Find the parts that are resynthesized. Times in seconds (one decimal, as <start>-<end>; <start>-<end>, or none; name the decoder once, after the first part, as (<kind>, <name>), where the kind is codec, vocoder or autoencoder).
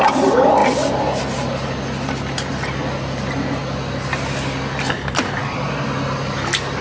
none